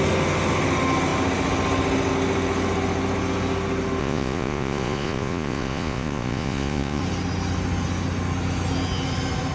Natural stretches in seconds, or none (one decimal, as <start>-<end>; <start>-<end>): 0.0-4.0; 7.0-9.5